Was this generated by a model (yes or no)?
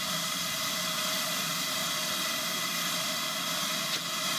no